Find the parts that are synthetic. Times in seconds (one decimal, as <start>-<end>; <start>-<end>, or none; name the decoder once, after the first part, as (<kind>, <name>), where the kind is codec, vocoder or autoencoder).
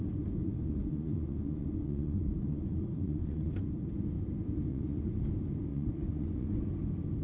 0.4-3.5 (vocoder, Vocos); 4.7-5.3; 5.7-6.6